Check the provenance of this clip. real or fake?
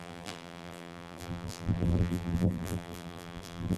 fake